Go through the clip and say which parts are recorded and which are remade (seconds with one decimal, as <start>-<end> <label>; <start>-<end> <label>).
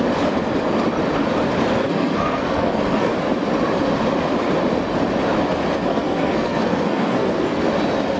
0.0-1.8 recorded; 1.8-3.1 remade; 3.1-5.9 recorded; 5.9-7.6 remade; 7.6-8.2 recorded